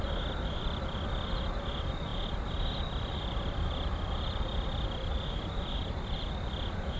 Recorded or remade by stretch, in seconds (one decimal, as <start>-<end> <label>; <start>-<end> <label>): 0.0-2.1 recorded; 2.1-6.3 remade; 6.3-7.0 recorded